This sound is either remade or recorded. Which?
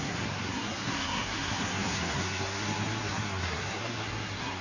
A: remade